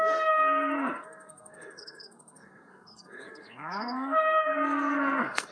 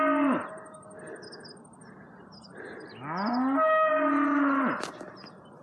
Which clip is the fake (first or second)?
first